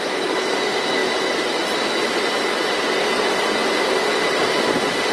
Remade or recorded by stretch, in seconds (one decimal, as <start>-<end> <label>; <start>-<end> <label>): 0.0-5.1 recorded